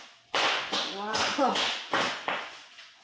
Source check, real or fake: fake